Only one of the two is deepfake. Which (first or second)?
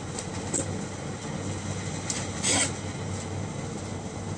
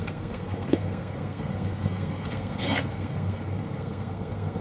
second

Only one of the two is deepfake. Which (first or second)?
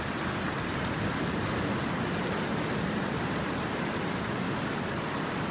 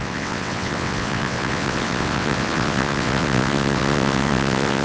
second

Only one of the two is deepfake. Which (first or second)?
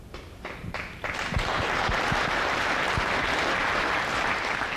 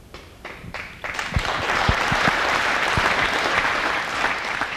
second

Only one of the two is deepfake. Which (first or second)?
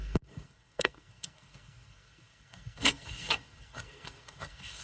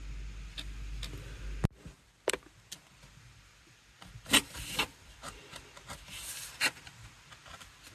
first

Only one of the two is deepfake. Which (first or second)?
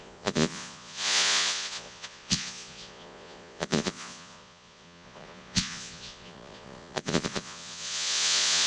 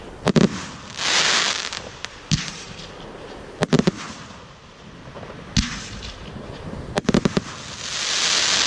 first